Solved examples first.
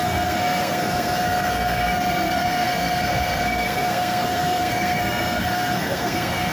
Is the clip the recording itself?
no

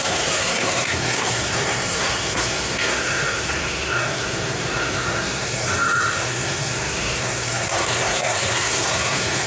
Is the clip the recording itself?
no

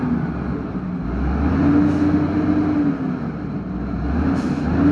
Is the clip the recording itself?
yes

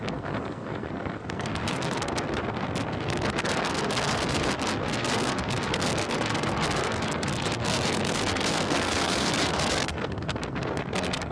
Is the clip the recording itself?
no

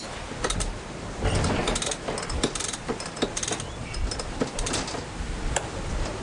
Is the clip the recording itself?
yes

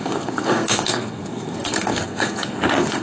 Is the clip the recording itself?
no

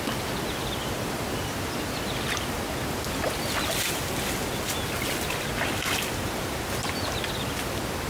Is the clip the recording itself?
yes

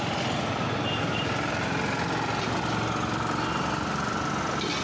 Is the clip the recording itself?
yes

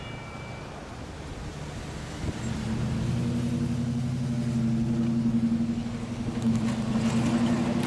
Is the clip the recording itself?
yes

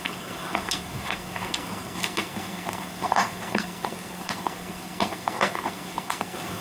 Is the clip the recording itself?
no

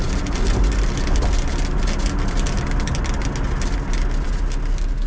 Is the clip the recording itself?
yes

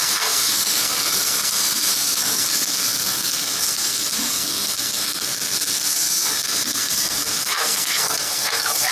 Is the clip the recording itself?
no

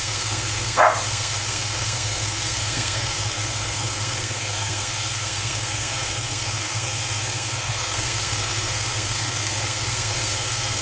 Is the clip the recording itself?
no